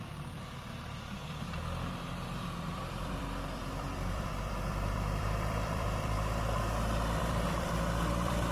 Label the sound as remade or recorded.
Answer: remade